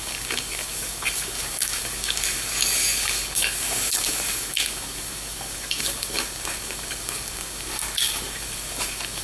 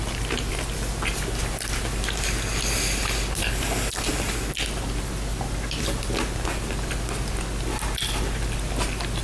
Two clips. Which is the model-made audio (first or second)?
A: first